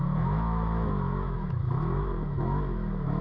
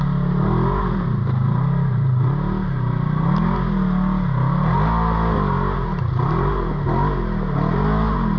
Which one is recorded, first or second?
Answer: second